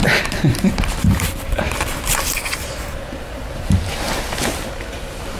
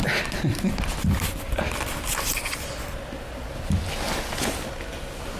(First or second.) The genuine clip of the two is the second